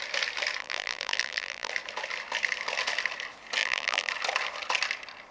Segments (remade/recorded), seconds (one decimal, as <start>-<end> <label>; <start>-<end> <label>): 0.0-0.6 recorded; 0.6-1.7 remade; 1.7-3.6 recorded; 3.6-4.1 remade; 4.1-5.3 recorded